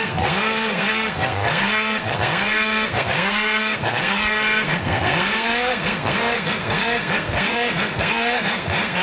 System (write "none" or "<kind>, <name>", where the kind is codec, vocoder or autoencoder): codec, SNAC